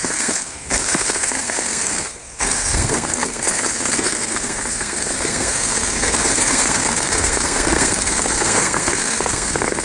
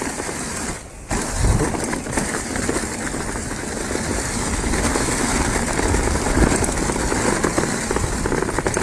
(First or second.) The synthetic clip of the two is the first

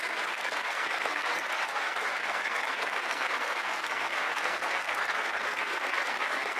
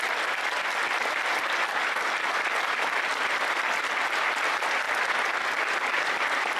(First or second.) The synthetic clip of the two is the first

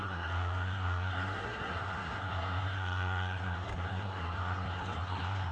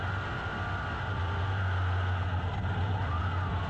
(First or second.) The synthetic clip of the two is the first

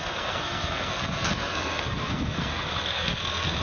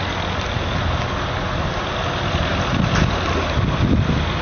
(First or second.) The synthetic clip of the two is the first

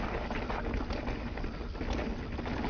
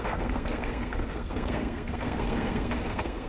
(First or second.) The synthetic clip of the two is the second